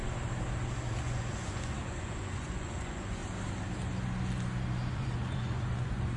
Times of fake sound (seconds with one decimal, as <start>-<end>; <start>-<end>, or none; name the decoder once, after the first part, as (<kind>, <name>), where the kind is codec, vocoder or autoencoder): 0.9-3.2 (vocoder, Vocos); 4.9-6.2